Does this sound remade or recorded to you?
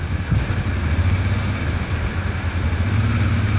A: recorded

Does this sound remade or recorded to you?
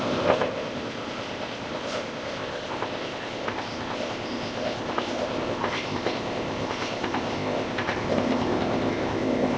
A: remade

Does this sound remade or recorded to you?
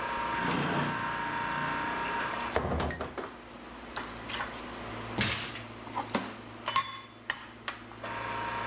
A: recorded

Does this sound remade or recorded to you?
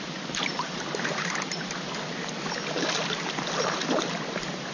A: recorded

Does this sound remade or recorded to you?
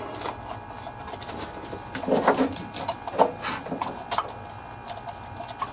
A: recorded